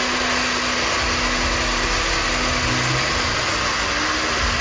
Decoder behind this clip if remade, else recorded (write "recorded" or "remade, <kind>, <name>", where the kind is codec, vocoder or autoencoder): recorded